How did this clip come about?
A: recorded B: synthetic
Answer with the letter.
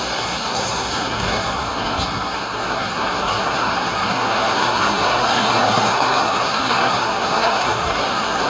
B